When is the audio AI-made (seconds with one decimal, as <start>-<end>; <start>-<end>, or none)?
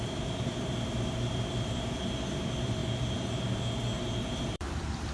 0.0-2.8; 4.3-5.1